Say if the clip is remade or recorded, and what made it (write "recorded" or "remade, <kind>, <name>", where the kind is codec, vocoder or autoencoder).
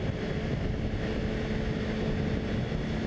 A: recorded